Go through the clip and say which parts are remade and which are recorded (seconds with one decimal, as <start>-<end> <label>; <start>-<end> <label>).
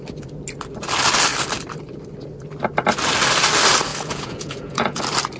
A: 0.0-3.9 recorded; 3.9-5.0 remade; 5.0-5.4 recorded